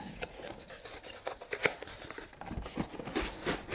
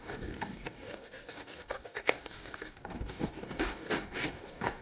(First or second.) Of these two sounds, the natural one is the first